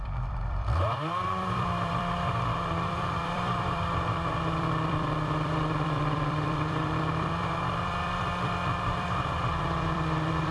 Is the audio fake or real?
fake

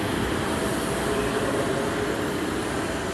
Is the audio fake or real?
fake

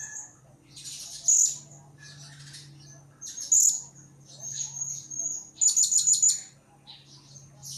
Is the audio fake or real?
real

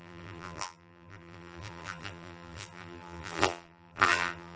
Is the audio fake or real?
fake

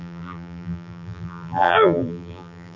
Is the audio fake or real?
fake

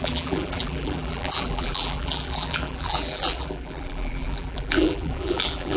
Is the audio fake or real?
fake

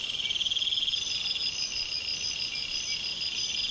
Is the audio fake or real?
real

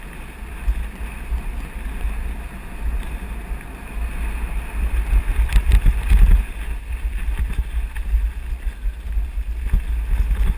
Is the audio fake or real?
real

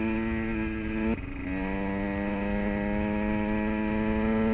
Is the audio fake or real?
real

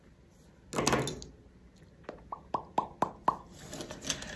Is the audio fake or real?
real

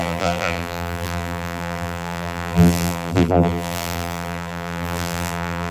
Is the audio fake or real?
fake